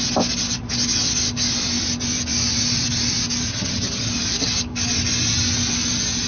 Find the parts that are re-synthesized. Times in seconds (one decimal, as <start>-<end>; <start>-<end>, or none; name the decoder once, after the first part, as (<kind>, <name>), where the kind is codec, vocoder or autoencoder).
3.5-4.1 (vocoder, HiFi-GAN)